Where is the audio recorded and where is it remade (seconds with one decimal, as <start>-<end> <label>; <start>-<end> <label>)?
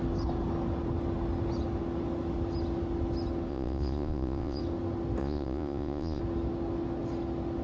0.0-3.5 recorded; 3.5-4.6 remade; 4.6-5.2 recorded; 5.2-6.2 remade; 6.2-7.6 recorded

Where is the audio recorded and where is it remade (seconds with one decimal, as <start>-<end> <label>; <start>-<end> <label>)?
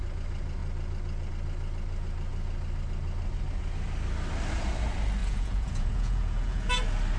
0.0-5.2 recorded; 5.2-6.7 remade; 6.7-7.2 recorded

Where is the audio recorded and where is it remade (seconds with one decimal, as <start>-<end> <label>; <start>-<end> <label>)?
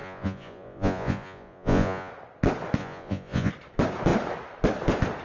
0.0-2.1 remade; 2.1-2.8 recorded; 2.8-3.5 remade; 3.5-5.2 recorded